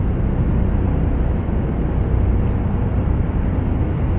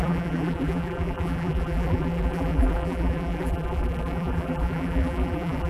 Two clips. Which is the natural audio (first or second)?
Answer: first